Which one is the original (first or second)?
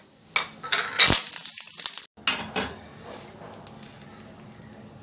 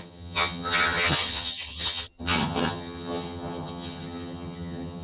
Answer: first